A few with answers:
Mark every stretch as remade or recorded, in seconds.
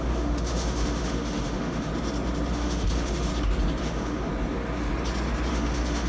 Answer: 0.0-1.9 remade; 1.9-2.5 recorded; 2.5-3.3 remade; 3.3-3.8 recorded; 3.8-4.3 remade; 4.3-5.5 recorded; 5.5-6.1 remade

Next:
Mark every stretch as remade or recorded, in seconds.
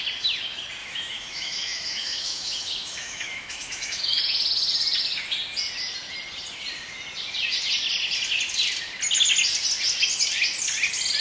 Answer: 0.0-0.8 recorded; 0.8-4.2 remade; 4.2-11.2 recorded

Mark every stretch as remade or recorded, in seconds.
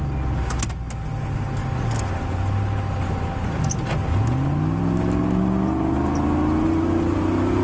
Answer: 0.0-7.6 recorded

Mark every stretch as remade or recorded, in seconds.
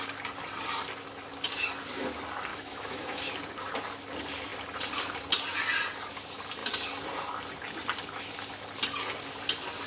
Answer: 0.0-2.5 recorded; 2.5-3.2 remade; 3.2-9.9 recorded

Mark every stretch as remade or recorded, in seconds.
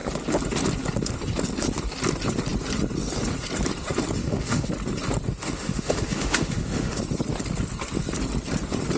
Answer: 0.0-4.2 recorded; 4.2-4.7 remade; 4.7-5.3 recorded; 5.3-7.0 remade; 7.0-9.0 recorded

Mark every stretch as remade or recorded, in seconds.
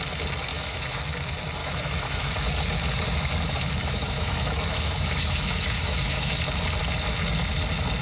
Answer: 0.0-0.5 recorded; 0.5-1.0 remade; 1.0-1.6 recorded; 1.6-2.3 remade; 2.3-3.8 recorded; 3.8-6.3 remade; 6.3-8.0 recorded